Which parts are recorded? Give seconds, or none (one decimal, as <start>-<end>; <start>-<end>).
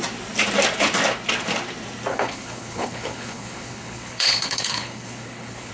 0.0-2.1